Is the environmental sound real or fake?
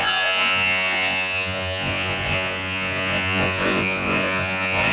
fake